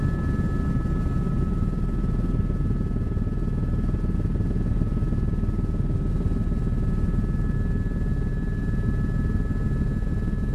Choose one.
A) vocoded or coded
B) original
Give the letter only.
B